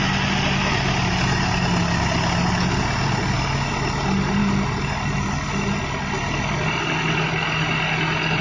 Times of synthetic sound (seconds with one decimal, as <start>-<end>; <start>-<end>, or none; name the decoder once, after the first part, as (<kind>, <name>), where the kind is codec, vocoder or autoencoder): none